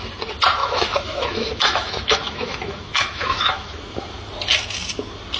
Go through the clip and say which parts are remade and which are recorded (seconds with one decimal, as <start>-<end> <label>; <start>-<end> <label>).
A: 0.0-0.6 recorded; 0.6-3.8 remade; 3.8-5.4 recorded